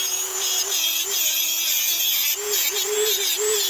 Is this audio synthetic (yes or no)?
yes